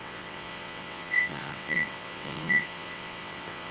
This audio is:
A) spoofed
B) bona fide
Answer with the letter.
A